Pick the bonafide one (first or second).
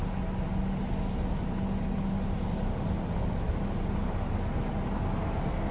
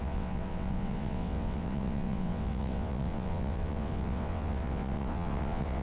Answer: first